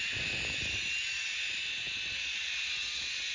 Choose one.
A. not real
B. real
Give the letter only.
B